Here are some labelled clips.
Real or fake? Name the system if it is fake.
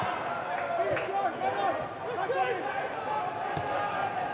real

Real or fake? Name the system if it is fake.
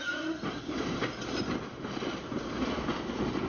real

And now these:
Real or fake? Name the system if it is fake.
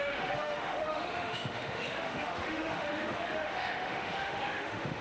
fake, autoencoder, DAC-VAE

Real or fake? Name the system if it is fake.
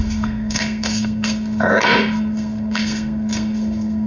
fake, codec, SNAC